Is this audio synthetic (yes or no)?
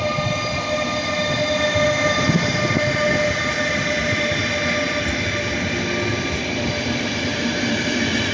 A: no